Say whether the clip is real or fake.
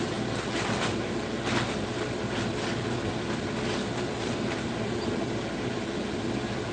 real